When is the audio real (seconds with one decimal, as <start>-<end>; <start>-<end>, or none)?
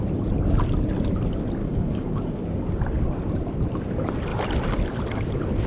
0.0-1.6; 2.6-5.7